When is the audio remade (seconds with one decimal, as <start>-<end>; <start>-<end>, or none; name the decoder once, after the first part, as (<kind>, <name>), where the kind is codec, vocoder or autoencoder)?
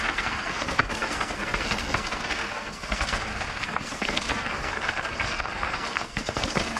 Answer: 0.0-6.8 (codec, SNAC)